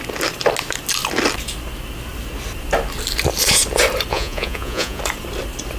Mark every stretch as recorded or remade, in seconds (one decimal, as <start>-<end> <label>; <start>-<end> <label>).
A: 0.0-4.1 recorded; 4.1-5.0 remade; 5.0-5.8 recorded